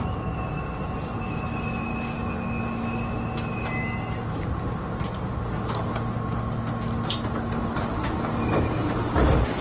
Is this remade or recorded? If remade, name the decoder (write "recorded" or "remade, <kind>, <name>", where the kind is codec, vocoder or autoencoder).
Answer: recorded